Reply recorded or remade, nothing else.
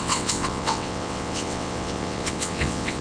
remade